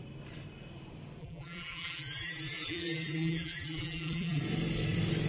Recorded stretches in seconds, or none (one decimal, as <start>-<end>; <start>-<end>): 0.0-1.2; 4.4-5.3